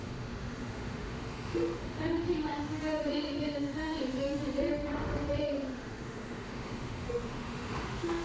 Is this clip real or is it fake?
fake